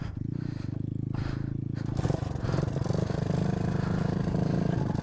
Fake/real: real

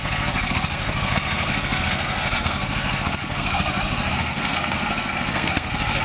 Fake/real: fake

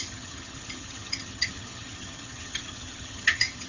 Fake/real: fake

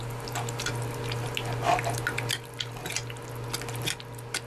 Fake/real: real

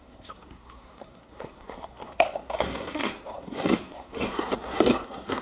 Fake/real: fake